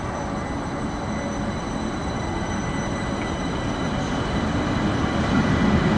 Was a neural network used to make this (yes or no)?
yes